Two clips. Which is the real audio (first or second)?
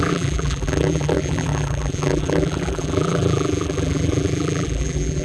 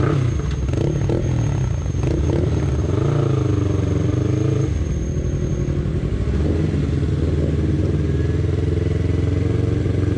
second